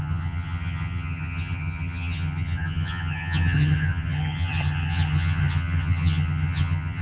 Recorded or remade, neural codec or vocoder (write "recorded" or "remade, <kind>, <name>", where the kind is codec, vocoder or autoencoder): remade, vocoder, HiFi-GAN